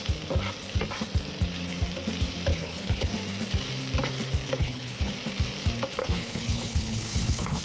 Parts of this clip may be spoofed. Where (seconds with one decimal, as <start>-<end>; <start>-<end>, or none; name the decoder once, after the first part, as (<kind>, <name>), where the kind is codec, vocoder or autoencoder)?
2.5-3.1 (codec, HILCodec); 4.6-5.1; 6.0-7.6